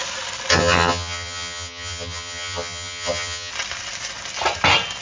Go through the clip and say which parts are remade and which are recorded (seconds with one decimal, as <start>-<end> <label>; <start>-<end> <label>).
0.0-0.5 recorded; 0.5-3.5 remade; 3.5-5.0 recorded

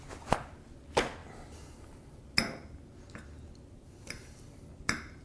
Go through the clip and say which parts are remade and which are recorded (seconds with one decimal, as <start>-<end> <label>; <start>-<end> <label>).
0.0-5.2 recorded

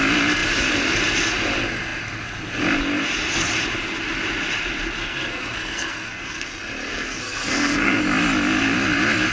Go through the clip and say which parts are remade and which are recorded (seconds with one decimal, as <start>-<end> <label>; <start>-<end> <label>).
0.0-5.0 recorded; 5.0-6.5 remade; 6.5-6.9 recorded; 6.9-8.0 remade; 8.0-9.3 recorded

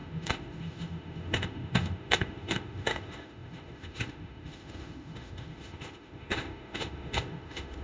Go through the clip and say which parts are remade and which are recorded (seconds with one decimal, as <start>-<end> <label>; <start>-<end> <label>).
0.0-7.8 remade

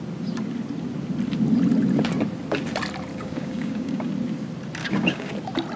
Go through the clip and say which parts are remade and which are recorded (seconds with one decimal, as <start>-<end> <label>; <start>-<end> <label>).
0.0-3.1 recorded; 3.1-4.1 remade; 4.1-4.8 recorded; 4.8-5.3 remade; 5.3-5.8 recorded